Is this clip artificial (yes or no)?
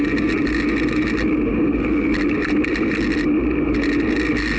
no